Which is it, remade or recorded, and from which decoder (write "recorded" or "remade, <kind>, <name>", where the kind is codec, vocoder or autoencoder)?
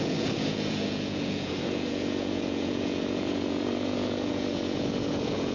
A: remade, vocoder, Vocos